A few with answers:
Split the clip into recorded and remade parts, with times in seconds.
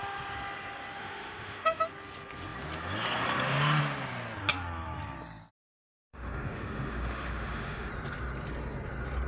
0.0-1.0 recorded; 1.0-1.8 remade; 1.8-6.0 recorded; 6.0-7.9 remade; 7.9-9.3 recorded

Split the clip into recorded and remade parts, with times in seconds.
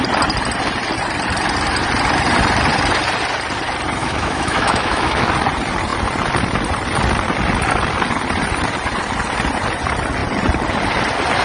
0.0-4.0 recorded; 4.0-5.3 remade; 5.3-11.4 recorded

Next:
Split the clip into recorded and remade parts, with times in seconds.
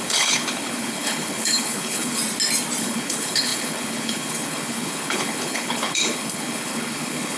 0.0-2.2 remade; 2.2-2.8 recorded; 2.8-7.4 remade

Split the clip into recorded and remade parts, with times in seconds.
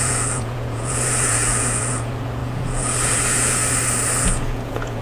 0.0-3.6 remade; 3.6-4.2 recorded; 4.2-5.0 remade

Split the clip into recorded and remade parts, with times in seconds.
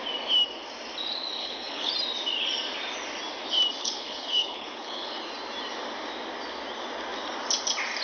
0.0-1.4 recorded; 1.4-1.9 remade; 1.9-3.8 recorded; 3.8-5.2 remade; 5.2-8.0 recorded